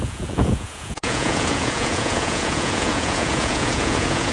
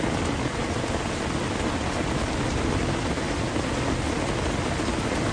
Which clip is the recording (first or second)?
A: second